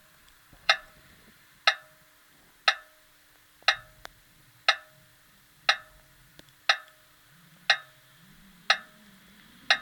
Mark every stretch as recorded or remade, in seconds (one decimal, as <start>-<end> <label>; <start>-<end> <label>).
0.0-1.6 remade; 1.6-9.8 recorded